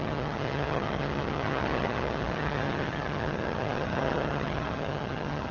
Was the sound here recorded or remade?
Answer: remade